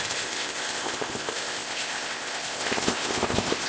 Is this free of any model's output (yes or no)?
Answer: no